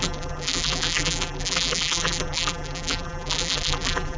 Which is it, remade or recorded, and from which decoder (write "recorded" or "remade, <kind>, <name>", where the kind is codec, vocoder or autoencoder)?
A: remade, vocoder, BigVGAN v2